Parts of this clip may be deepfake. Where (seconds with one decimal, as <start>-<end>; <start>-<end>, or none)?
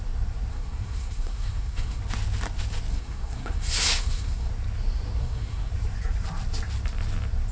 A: 0.5-2.0; 2.9-4.5; 5.2-5.7